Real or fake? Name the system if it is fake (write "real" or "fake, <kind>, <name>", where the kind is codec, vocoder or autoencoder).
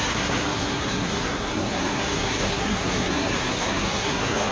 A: fake, codec, SNAC